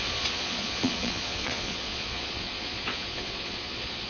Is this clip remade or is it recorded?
remade